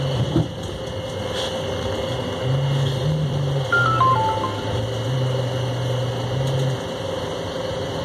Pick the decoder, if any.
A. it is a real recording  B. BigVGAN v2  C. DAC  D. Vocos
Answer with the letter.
A